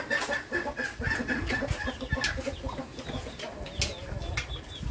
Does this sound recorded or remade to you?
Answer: recorded